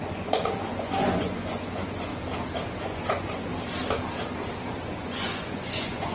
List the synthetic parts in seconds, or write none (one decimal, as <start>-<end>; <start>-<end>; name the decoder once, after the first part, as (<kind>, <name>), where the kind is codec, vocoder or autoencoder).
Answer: 0.0-2.1 (vocoder, Vocos); 2.8-3.5; 4.9-6.1